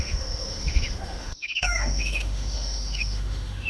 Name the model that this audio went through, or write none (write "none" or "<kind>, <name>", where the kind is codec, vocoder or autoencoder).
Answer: autoencoder, DAC-VAE